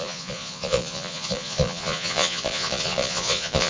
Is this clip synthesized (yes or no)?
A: yes